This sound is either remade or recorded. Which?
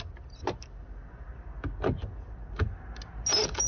recorded